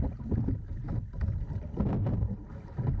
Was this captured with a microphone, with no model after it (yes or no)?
yes